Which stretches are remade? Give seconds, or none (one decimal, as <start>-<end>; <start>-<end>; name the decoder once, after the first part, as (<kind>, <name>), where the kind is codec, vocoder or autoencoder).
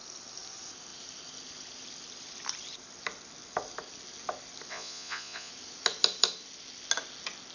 4.7-5.5 (vocoder, Vocos)